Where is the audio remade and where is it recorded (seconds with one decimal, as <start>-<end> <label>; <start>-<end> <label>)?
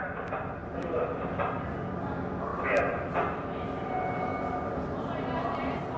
0.0-6.0 remade